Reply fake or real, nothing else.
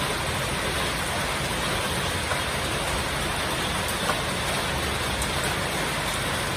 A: real